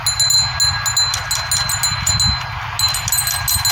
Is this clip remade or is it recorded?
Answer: recorded